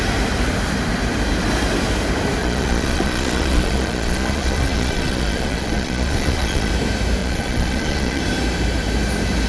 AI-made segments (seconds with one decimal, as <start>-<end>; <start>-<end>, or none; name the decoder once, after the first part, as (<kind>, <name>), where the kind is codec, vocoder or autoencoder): 2.4-6.7 (vocoder, Vocos); 7.2-8.2